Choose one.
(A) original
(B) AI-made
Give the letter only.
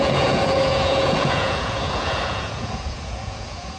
B